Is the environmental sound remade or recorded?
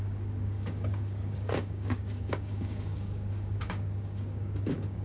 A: remade